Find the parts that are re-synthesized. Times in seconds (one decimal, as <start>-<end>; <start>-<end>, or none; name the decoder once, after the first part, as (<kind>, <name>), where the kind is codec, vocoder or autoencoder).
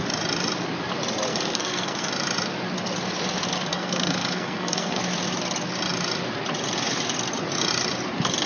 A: 1.3-2.1 (codec, SNAC); 3.7-5.0